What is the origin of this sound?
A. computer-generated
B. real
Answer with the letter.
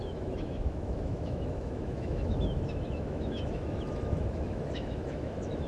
A